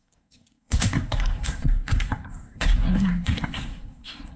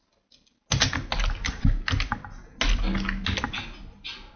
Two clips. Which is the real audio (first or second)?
second